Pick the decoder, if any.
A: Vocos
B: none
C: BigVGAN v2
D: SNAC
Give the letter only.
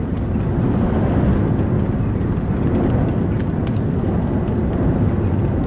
B